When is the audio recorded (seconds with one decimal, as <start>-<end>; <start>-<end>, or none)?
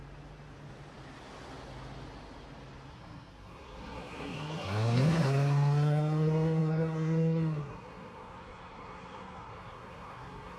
0.0-2.9